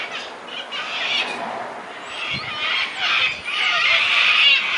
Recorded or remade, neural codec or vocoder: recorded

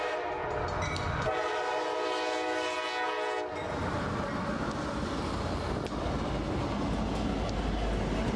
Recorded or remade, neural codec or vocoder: recorded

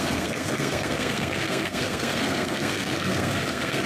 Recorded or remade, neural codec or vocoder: remade, codec, SNAC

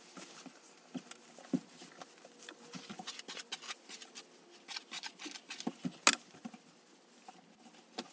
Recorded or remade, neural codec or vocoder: recorded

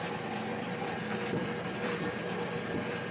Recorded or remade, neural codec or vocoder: remade, vocoder, BigVGAN v2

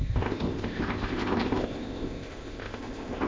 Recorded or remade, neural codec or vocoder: remade, codec, ZipCodec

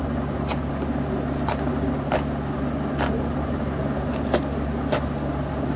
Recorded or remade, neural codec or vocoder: recorded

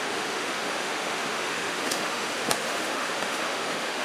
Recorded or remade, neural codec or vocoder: remade, autoencoder, DAC-VAE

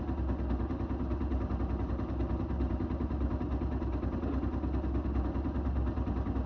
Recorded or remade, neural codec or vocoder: recorded